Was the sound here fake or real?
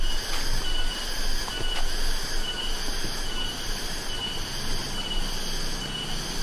real